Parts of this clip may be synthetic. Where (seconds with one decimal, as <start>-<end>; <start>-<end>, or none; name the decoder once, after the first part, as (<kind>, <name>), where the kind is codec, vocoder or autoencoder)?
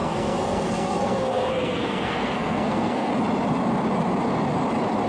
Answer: 0.0-3.1 (codec, SNAC)